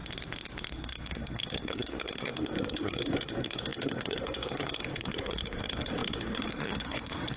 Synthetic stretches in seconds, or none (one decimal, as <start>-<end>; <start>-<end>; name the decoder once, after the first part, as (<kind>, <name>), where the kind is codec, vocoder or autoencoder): 0.7-7.4 (codec, SNAC)

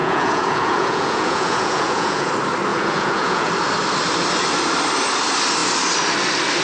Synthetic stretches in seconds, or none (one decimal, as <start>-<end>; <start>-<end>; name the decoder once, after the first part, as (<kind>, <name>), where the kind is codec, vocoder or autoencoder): 0.0-2.3 (vocoder, Vocos); 2.7-3.5

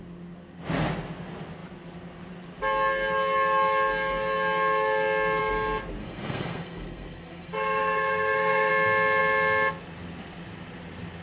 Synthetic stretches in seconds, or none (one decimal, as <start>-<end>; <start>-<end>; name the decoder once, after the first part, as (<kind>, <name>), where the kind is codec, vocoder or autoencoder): 6.0-8.7 (codec, SNAC)